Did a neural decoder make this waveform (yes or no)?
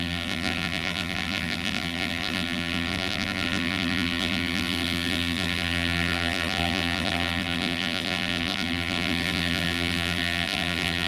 yes